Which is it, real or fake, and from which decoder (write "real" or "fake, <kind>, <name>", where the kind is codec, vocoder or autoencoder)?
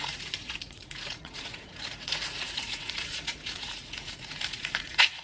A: fake, vocoder, Vocos